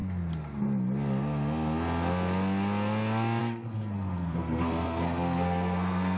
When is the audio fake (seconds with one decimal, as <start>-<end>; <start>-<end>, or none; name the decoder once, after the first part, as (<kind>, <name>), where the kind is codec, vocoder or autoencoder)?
3.4-6.2 (codec, SNAC)